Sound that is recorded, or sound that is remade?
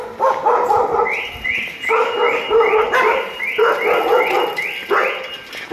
recorded